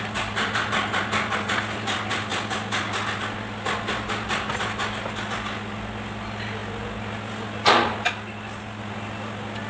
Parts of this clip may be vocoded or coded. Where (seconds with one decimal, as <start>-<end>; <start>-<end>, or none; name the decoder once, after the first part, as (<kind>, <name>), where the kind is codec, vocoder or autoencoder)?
none